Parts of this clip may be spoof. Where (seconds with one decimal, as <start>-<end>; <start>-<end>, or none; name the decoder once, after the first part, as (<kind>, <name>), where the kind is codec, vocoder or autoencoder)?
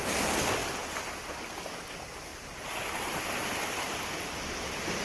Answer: none